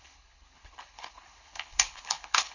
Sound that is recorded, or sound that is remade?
remade